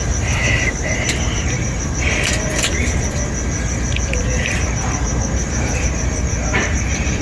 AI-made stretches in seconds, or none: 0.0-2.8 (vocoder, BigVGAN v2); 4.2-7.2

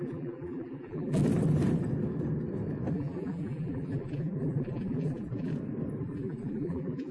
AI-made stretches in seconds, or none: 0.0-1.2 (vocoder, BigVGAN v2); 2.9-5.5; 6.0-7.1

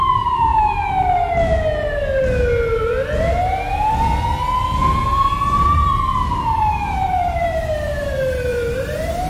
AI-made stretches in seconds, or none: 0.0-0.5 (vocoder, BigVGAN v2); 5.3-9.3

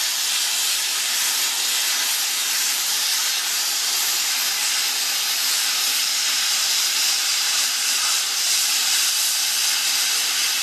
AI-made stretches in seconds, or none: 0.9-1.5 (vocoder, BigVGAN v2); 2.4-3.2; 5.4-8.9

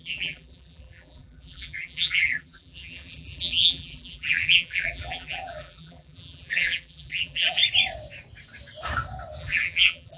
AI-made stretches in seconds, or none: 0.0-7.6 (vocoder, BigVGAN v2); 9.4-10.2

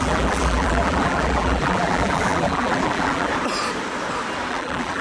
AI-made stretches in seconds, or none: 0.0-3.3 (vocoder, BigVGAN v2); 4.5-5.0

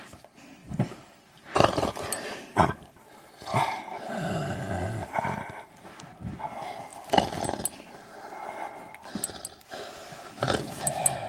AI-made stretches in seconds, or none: 0.6-2.9 (vocoder, BigVGAN v2)